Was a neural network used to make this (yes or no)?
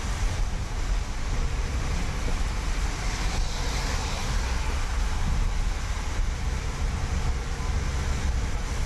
no